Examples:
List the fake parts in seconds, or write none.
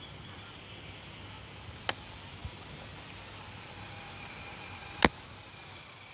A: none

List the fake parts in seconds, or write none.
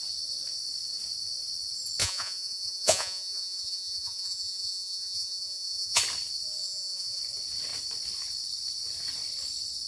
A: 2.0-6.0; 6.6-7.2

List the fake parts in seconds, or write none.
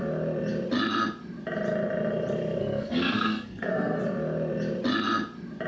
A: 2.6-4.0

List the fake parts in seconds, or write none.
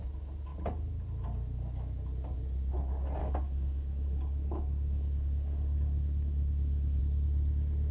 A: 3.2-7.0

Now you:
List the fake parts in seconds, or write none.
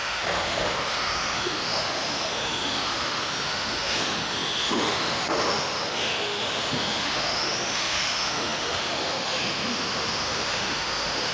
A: 0.0-11.3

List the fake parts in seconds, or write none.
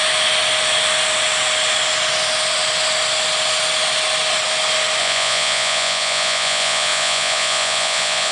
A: 5.0-8.3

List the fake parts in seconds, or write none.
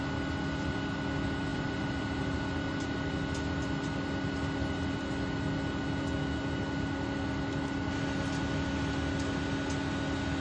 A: 1.5-2.4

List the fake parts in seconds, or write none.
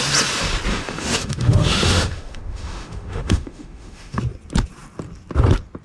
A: 0.7-4.2